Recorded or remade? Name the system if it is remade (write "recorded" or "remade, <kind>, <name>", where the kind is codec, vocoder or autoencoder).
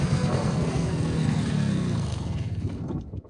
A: remade, codec, SNAC